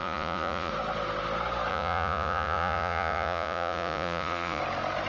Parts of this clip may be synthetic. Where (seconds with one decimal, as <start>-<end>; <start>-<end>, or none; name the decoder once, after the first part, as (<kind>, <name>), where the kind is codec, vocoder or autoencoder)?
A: 0.0-0.7 (vocoder, Vocos); 1.7-4.6